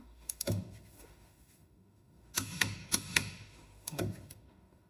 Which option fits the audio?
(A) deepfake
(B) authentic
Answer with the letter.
A